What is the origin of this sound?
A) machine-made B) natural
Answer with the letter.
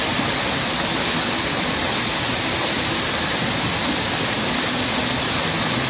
B